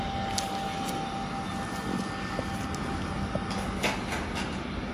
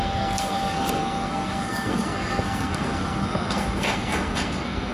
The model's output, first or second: second